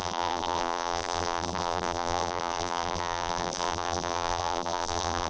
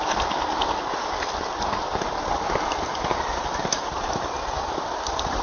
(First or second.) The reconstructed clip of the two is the first